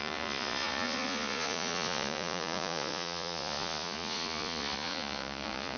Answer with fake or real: fake